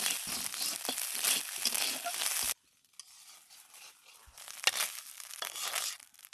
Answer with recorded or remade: recorded